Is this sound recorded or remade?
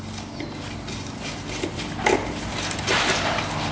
recorded